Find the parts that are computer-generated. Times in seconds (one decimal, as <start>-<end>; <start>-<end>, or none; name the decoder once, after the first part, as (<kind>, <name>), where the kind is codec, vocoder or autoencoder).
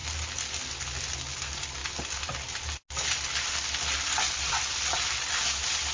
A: none